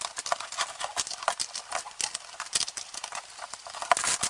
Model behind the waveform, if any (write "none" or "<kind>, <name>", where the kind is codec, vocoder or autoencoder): none